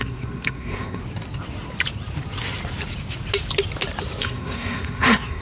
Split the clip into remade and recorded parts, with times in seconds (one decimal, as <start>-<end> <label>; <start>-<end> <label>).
0.0-1.0 remade; 1.0-4.2 recorded; 4.2-5.4 remade